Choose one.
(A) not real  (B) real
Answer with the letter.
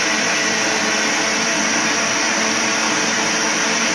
B